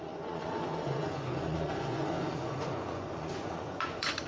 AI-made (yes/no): yes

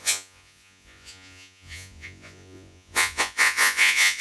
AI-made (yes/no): yes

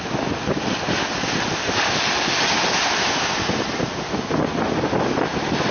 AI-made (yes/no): no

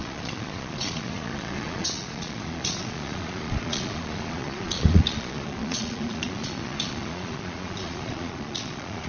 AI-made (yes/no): yes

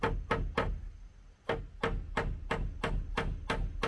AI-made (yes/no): no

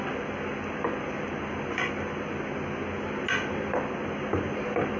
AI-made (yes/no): no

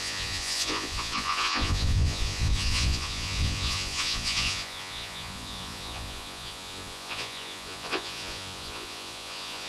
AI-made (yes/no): yes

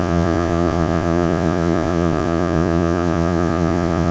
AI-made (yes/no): yes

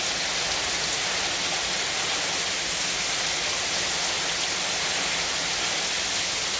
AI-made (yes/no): no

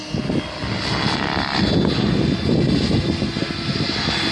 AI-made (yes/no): no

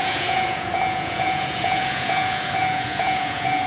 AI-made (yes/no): yes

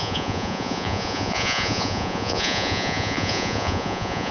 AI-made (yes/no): yes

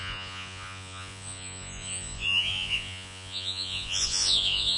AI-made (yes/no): yes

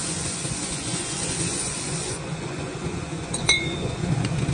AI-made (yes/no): yes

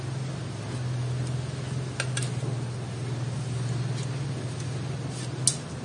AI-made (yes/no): no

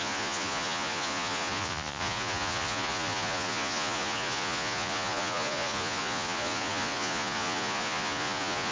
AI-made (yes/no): yes